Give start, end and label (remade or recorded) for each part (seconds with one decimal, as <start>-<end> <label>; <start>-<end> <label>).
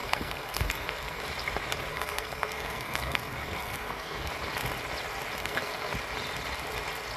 0.0-1.2 remade; 1.2-1.9 recorded; 1.9-4.3 remade; 4.3-5.4 recorded; 5.4-5.9 remade; 5.9-7.2 recorded